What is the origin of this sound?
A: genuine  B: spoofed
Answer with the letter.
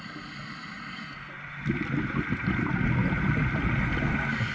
A